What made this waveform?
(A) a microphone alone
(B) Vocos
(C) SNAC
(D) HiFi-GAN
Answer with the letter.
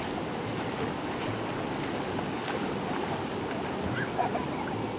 A